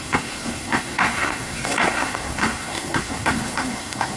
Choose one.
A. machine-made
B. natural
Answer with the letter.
A